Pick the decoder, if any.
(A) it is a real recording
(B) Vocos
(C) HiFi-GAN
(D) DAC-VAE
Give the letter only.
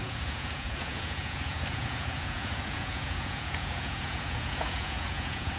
B